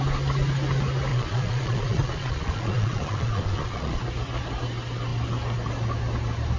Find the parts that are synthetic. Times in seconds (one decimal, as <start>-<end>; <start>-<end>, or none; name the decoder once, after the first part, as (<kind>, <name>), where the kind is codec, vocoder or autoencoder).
1.1-4.0 (vocoder, Vocos)